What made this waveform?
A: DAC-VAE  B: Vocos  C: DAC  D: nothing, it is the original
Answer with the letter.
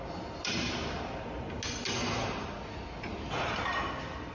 D